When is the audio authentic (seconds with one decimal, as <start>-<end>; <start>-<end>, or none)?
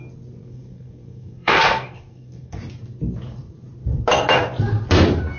0.0-0.4; 2.6-5.4